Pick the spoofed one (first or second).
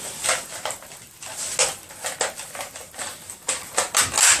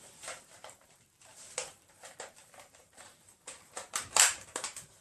second